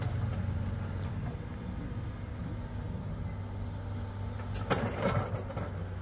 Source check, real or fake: real